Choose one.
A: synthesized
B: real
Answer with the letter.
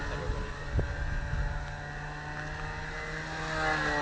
B